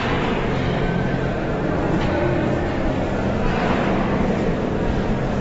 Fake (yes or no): yes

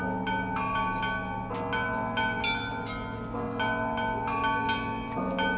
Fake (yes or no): no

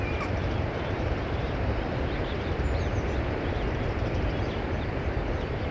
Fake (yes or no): yes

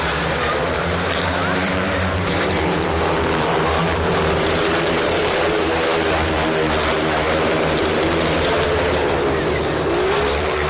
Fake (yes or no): yes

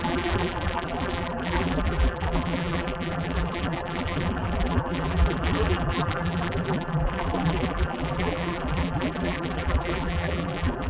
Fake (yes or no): yes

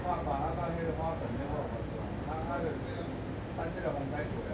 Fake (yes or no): no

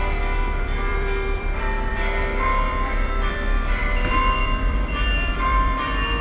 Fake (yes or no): yes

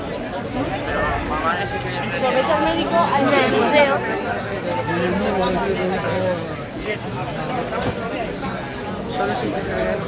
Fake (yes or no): no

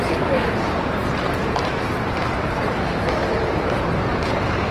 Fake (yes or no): yes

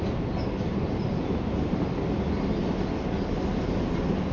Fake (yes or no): no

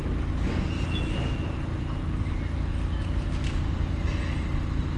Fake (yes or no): no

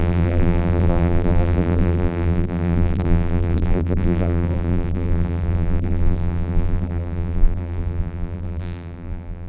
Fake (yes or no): yes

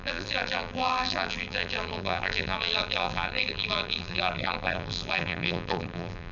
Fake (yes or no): yes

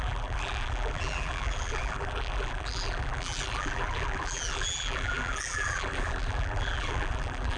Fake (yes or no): yes